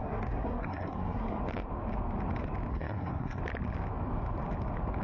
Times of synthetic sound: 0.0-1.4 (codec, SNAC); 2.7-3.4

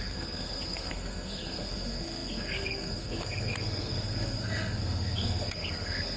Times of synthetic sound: 0.0-6.2 (codec, SNAC)

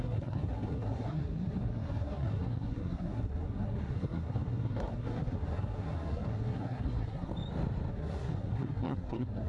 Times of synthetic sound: 0.0-7.3 (codec, SNAC); 7.9-9.5

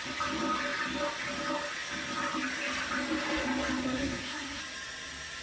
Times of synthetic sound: 3.8-4.6 (codec, SNAC)

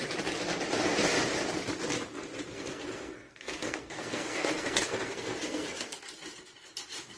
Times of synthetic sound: 2.5-6.0 (codec, SNAC)